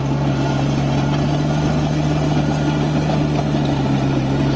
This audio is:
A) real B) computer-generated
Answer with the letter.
A